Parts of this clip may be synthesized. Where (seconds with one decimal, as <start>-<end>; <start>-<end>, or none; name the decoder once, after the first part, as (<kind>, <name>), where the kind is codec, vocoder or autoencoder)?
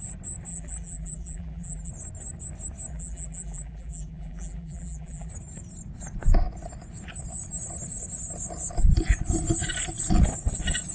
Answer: 0.5-1.9 (vocoder, BigVGAN v2); 2.9-5.3